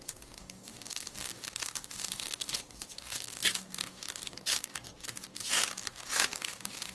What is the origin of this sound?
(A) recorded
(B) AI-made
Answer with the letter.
B